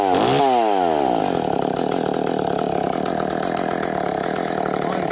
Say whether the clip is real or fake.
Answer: real